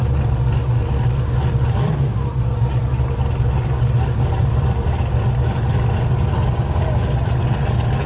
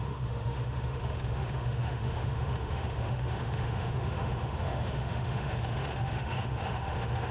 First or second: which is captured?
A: first